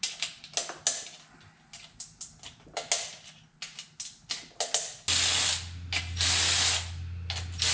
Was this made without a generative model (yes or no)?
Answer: yes